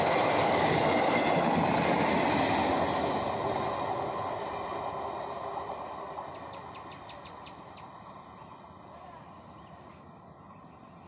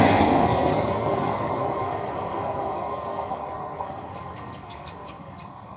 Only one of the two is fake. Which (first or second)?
second